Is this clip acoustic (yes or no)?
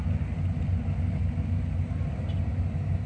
yes